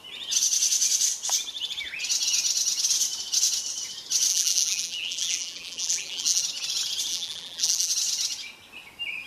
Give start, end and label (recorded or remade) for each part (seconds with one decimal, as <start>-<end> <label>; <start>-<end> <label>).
0.0-4.3 recorded; 4.3-6.4 remade; 6.4-7.1 recorded; 7.1-7.9 remade; 7.9-9.3 recorded